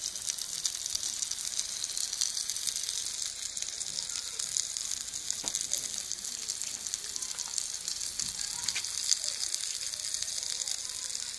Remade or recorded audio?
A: recorded